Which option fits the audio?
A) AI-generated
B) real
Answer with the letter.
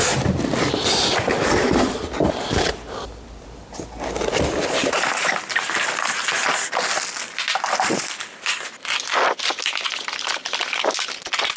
B